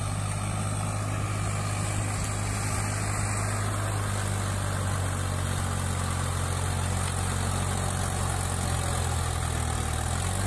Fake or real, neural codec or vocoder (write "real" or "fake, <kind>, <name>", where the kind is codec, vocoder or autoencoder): real